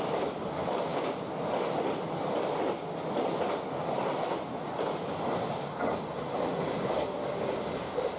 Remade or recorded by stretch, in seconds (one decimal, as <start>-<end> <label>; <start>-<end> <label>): 0.0-8.2 recorded